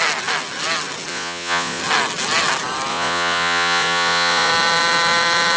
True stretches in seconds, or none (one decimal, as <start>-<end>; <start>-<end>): 0.0-1.1; 1.8-2.9; 4.5-5.6